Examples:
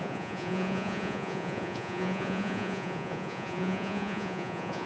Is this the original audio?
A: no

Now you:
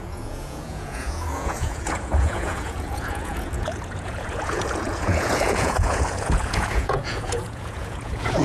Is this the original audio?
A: no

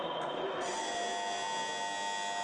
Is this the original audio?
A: yes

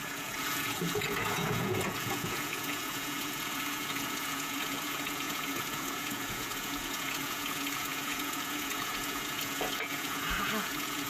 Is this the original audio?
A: no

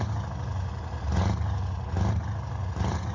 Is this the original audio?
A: yes